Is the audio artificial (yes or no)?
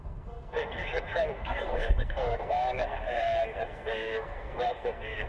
yes